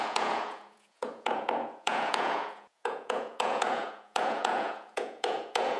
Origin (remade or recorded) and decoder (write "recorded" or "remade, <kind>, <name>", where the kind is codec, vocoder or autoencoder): remade, vocoder, Vocos